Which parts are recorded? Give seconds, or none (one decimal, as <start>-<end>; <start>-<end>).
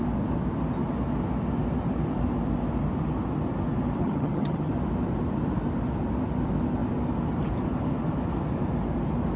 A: 0.0-4.0; 4.7-9.4